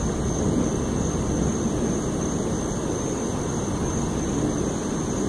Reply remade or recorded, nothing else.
recorded